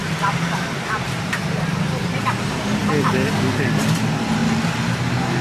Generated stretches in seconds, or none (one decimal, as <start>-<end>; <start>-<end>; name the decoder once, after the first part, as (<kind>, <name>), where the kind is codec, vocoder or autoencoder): 0.0-2.8 (vocoder, BigVGAN v2); 3.8-4.4